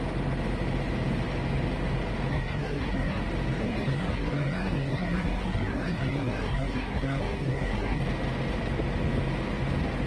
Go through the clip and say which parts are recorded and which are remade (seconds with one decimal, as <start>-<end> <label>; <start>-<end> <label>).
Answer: 0.0-2.3 recorded; 2.3-3.2 remade; 3.2-3.6 recorded; 3.6-8.0 remade; 8.0-10.1 recorded